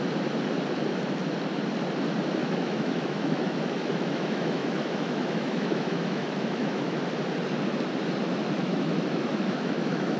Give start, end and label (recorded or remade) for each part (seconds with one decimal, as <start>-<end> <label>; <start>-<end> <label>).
0.0-2.4 recorded; 2.4-7.0 remade; 7.0-8.6 recorded; 8.6-10.2 remade